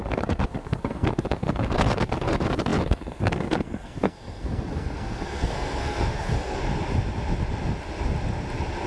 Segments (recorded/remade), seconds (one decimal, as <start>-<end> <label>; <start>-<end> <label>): 0.0-6.6 remade; 6.6-8.9 recorded